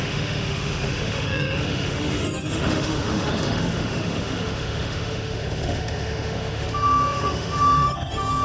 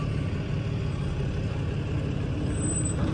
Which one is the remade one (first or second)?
first